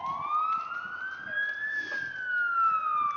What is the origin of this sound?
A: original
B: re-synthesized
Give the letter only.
A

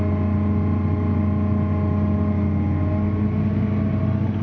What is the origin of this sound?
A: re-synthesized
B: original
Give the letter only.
B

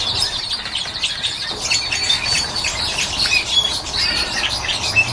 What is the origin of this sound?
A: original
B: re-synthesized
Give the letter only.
B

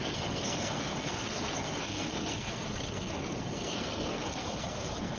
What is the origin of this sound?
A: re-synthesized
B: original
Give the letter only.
A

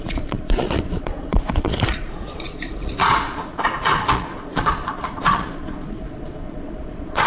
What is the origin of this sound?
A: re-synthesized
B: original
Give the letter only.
A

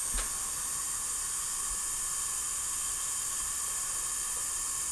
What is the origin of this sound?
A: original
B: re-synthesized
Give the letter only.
A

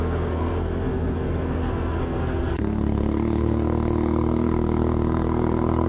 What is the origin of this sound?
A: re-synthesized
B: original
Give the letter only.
A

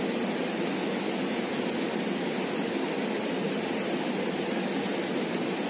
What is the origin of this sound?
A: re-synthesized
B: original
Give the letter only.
B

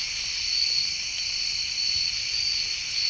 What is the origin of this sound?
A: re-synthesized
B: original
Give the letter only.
B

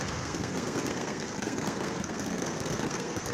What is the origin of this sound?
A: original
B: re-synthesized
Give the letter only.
B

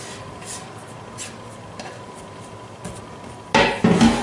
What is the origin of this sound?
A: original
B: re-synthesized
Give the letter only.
A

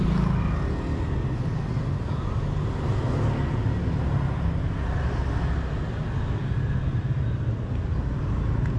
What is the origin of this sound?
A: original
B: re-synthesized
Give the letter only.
A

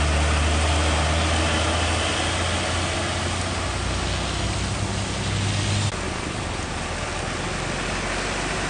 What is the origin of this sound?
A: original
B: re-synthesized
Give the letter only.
A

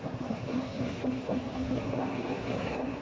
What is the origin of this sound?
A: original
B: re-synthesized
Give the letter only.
B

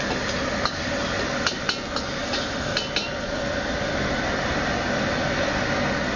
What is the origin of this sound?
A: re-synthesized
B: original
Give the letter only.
B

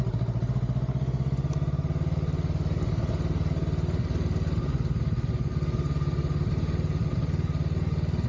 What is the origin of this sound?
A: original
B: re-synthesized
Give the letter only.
A